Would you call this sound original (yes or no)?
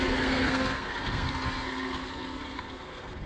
no